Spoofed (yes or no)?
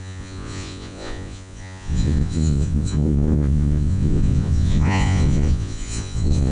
yes